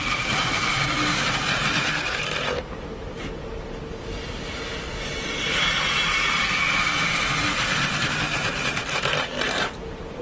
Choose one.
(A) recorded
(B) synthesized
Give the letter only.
A